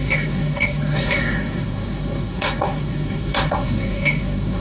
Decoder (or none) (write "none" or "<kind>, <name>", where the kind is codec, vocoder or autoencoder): codec, SNAC